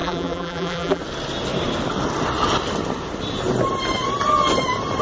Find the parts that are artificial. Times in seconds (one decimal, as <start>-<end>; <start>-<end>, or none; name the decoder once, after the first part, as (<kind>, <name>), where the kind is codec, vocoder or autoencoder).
0.0-1.0 (vocoder, BigVGAN v2)